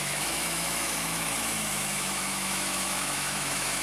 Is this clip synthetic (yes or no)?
yes